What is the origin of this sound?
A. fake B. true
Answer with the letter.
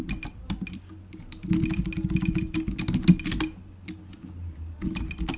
B